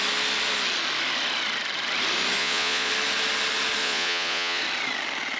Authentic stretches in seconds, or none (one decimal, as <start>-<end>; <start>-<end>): 0.0-2.4; 2.9-3.8; 4.6-5.4